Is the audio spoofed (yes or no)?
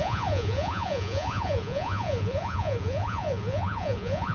yes